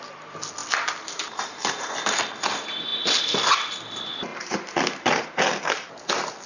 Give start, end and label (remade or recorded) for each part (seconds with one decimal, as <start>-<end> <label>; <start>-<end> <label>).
0.0-0.6 recorded; 0.6-2.3 remade; 2.3-4.3 recorded; 4.3-6.1 remade; 6.1-6.5 recorded